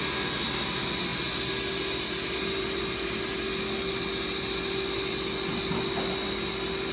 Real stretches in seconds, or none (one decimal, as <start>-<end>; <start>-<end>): 0.0-6.9